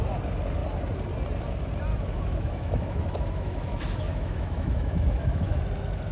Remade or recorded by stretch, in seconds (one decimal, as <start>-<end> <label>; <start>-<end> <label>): 0.0-1.9 recorded; 1.9-5.6 remade; 5.6-6.1 recorded